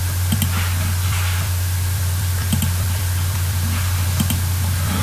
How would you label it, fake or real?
fake